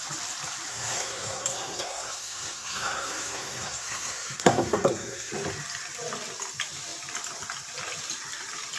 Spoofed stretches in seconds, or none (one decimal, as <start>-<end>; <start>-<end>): 0.7-5.3